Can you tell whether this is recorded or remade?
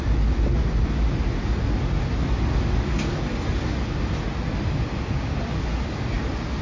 recorded